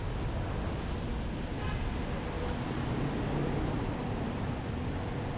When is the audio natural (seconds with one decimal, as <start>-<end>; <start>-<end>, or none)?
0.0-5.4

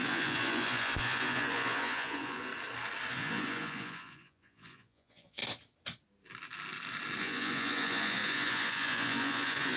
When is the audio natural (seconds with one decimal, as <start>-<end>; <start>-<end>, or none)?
2.5-3.1; 5.4-7.2

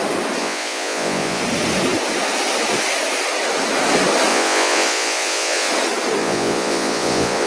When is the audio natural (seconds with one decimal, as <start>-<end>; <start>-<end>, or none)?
0.0-0.4; 1.4-4.3; 5.7-6.2

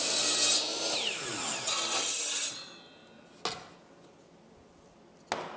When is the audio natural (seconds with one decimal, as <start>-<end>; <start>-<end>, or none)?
0.0-5.6

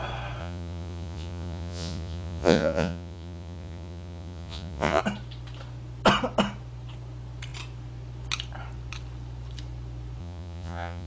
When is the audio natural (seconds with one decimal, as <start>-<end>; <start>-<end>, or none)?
0.0-0.4; 5.0-10.2

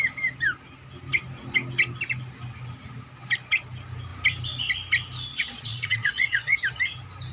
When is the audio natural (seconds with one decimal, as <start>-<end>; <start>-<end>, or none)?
0.0-5.3; 6.6-7.3

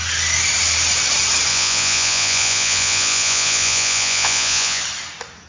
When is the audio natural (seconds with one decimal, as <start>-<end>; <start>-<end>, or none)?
0.0-1.5; 4.8-5.5

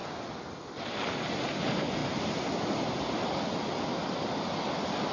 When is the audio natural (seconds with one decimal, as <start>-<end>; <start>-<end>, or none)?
0.0-5.1